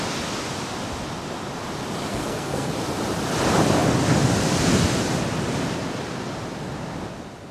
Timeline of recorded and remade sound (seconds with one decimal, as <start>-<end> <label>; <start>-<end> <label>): 0.0-2.1 recorded; 2.1-2.7 remade; 2.7-7.5 recorded